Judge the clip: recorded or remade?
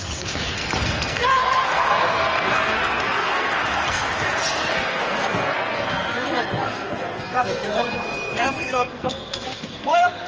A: remade